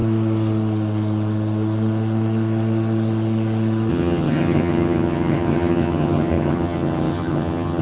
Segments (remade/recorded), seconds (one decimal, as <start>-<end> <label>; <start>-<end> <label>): 0.0-3.9 recorded; 3.9-7.8 remade